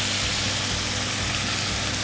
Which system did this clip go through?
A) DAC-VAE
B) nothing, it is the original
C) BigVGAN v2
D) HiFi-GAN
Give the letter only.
B